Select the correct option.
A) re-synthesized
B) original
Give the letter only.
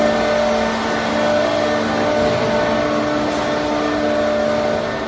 B